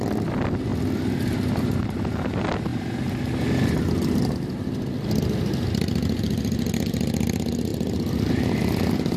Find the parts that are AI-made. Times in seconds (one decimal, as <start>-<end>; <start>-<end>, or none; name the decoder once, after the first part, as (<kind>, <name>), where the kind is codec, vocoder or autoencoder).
none